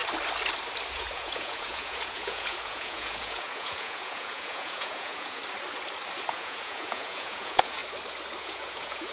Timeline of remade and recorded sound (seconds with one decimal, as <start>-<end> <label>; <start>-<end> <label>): 0.0-0.9 recorded; 0.9-5.4 remade; 5.4-6.3 recorded; 6.3-7.8 remade; 7.8-8.4 recorded; 8.4-9.1 remade